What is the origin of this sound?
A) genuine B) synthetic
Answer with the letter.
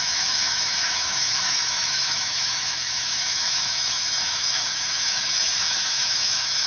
B